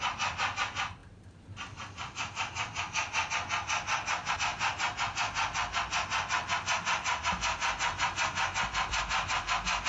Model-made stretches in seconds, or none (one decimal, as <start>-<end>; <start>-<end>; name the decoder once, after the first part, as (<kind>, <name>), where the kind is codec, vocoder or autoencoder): none